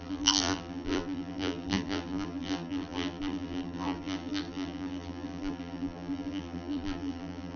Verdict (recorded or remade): remade